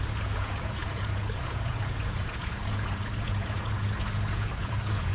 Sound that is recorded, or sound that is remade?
remade